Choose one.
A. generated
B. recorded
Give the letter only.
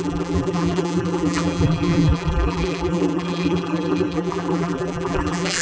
A